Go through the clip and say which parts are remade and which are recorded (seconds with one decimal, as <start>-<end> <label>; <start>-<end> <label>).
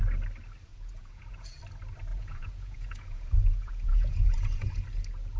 0.0-0.7 recorded; 0.7-1.6 remade; 1.6-2.1 recorded; 2.1-4.8 remade; 4.8-5.4 recorded